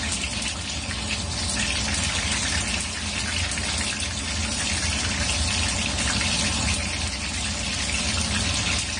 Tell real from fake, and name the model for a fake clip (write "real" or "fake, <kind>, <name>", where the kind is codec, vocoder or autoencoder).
real